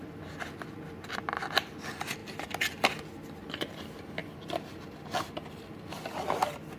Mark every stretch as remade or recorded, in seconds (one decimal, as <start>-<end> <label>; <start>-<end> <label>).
0.0-6.8 recorded